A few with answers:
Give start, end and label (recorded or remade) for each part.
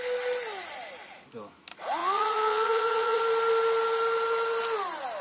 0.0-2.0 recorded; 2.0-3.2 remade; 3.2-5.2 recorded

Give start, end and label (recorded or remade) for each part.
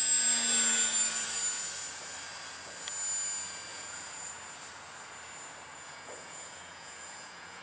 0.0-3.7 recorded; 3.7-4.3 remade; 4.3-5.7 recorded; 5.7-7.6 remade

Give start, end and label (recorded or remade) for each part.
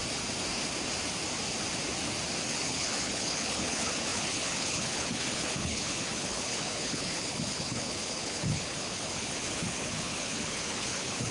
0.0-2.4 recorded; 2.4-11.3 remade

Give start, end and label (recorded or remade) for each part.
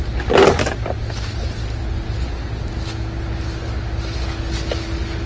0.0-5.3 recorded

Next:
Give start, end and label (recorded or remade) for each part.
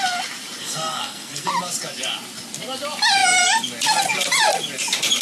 0.0-0.6 recorded; 0.6-1.5 remade; 1.5-5.2 recorded